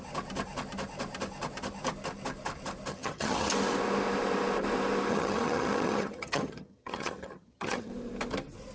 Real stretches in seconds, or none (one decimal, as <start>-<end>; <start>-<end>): 0.0-2.9; 3.5-5.1; 7.9-8.7